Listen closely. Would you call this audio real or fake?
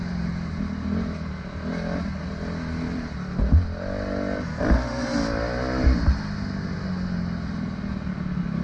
real